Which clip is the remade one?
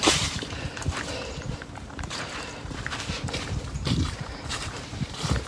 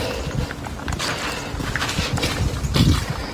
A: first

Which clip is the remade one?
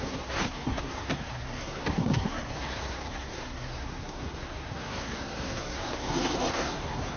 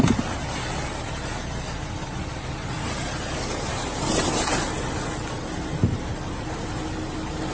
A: first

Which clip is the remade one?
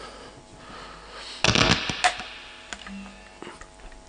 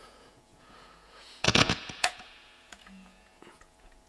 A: second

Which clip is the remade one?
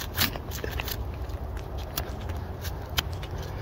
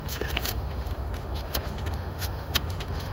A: second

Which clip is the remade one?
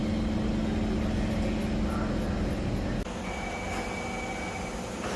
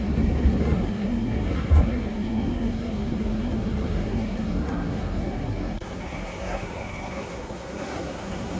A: second